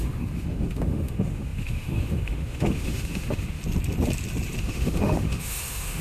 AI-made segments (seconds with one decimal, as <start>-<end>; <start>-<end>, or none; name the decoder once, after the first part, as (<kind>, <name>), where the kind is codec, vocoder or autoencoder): 0.0-3.6 (autoencoder, DAC-VAE); 4.6-6.0